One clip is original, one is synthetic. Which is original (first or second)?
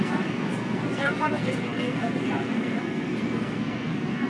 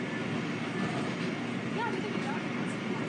second